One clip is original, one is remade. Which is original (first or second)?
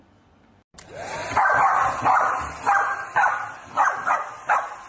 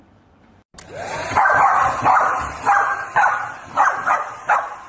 first